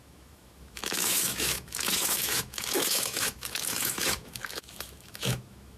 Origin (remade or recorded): remade